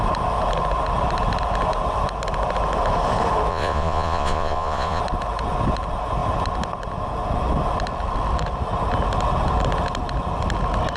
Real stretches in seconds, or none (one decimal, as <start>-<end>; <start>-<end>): 0.0-3.5; 5.0-11.0